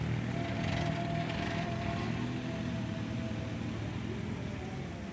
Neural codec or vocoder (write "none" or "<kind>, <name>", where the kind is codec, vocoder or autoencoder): none